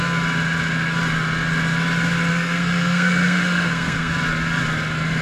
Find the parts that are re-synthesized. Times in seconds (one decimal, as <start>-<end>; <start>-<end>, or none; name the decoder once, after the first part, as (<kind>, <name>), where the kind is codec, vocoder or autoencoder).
2.3-4.1 (codec, SNAC)